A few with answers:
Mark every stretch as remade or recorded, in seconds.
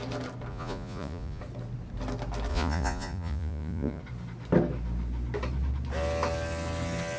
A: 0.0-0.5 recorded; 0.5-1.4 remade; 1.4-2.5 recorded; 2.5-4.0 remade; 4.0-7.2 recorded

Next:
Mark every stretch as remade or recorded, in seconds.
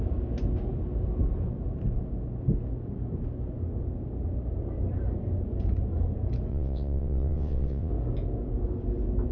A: 0.0-6.5 recorded; 6.5-7.9 remade; 7.9-9.3 recorded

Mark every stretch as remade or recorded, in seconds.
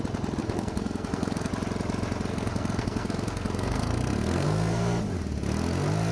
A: 0.0-0.4 recorded; 0.4-1.5 remade; 1.5-2.3 recorded; 2.3-5.0 remade; 5.0-6.1 recorded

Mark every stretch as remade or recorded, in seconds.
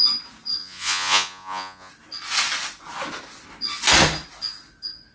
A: 0.0-0.6 recorded; 0.6-1.9 remade; 1.9-5.1 recorded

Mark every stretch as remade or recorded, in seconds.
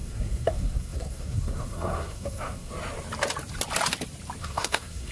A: 0.0-2.7 remade; 2.7-4.4 recorded; 4.4-5.1 remade